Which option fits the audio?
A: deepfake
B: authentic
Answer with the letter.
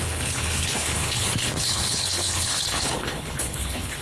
A